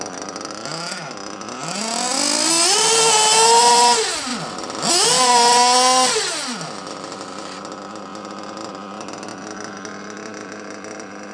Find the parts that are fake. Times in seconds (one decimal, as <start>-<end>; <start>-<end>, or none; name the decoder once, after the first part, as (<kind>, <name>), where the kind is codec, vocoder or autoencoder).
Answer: none